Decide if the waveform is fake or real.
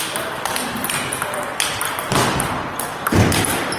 real